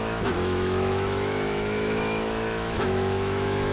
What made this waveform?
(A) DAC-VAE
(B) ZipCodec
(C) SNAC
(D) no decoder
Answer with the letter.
A